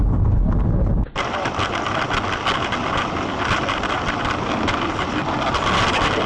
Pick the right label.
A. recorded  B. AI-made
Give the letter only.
A